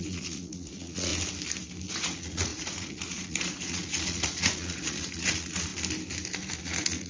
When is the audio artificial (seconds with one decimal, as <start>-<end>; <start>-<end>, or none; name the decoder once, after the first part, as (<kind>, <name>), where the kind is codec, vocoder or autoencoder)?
0.0-1.1 (vocoder, Vocos); 1.9-5.7; 6.6-7.1